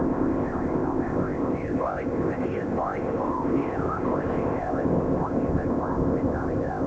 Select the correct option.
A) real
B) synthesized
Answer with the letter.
B